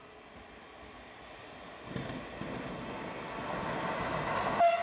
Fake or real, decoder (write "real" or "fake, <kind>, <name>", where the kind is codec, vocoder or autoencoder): real